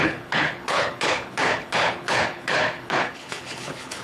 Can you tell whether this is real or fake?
fake